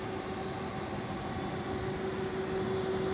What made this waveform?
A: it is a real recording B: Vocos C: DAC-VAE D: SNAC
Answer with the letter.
A